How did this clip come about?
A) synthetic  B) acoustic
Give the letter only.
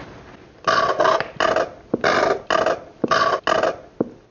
B